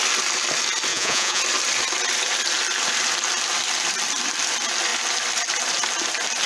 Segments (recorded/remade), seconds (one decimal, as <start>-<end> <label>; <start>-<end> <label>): 0.0-0.9 recorded; 0.9-1.4 remade; 1.4-6.5 recorded